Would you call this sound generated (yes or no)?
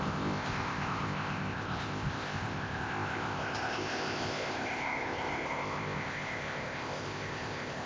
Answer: yes